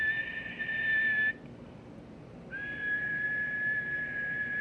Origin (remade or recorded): recorded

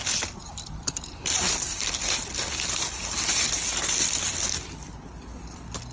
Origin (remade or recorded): recorded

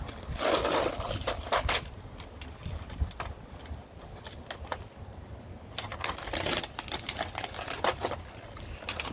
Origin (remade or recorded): recorded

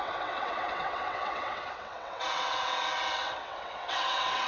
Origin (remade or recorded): remade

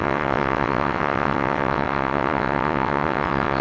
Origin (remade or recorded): remade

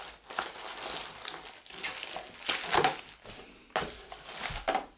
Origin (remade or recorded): recorded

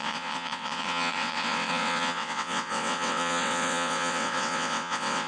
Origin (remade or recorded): remade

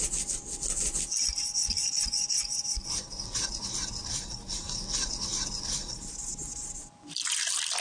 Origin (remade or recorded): recorded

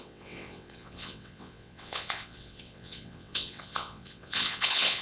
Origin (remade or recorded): remade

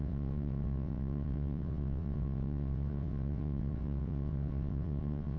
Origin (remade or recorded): remade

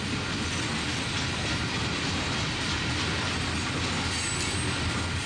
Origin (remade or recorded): recorded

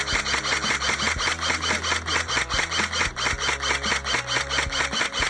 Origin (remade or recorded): recorded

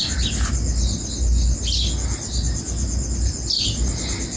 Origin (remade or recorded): recorded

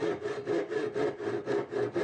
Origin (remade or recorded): recorded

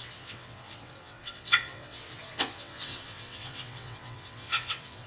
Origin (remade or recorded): remade